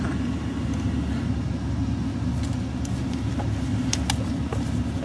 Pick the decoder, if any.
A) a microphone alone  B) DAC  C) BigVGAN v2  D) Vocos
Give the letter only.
A